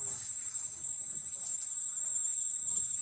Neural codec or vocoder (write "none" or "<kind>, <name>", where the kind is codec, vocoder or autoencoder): none